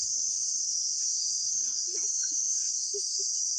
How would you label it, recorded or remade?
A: remade